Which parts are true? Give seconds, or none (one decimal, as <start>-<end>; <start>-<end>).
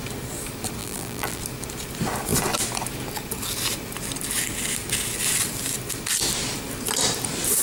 0.0-0.8; 1.4-7.6